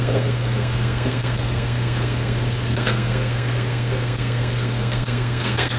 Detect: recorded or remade remade